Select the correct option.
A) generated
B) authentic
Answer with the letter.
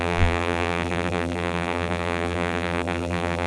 A